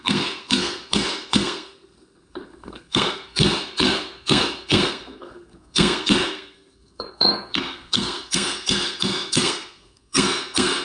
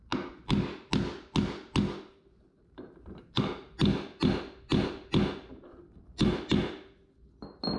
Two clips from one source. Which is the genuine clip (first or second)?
second